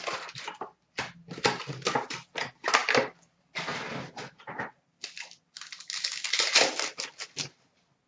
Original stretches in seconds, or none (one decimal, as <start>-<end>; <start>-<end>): 0.0-8.1